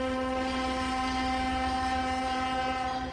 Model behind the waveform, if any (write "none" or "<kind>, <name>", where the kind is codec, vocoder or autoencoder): vocoder, BigVGAN v2